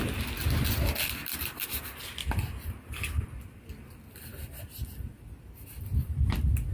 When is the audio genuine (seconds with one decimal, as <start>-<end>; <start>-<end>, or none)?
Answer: 0.0-6.7